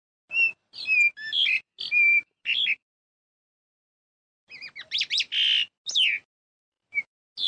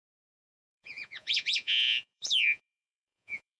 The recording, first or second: first